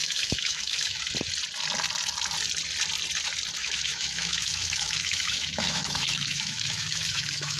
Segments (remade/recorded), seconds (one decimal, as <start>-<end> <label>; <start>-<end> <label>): 0.0-1.0 remade; 1.0-3.6 recorded; 3.6-7.6 remade